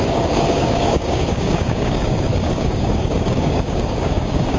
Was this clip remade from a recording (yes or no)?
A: yes